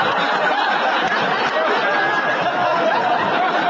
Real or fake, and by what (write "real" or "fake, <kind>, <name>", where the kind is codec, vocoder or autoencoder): real